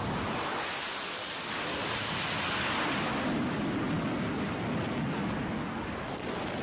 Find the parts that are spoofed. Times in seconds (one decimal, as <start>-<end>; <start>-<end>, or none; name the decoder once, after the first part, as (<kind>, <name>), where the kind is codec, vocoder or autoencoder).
none